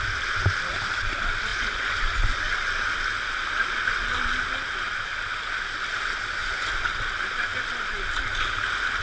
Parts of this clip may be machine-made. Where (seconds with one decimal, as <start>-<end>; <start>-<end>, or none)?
1.5-2.4; 6.4-6.9